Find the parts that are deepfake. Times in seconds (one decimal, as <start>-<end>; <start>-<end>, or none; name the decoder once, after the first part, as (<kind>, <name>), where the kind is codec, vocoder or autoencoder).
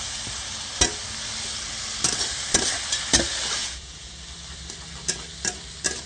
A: 3.6-4.2 (vocoder, Vocos)